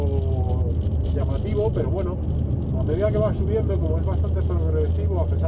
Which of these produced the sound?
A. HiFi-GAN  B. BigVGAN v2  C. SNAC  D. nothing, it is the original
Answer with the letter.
D